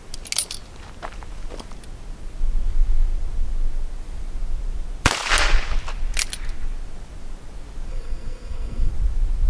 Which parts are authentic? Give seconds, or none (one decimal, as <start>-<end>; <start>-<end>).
0.0-7.9; 8.9-9.5